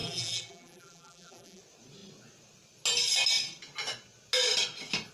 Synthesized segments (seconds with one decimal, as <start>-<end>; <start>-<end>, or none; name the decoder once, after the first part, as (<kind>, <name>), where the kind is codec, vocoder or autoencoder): 0.0-1.6 (vocoder, BigVGAN v2)